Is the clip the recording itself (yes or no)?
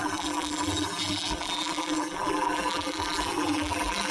no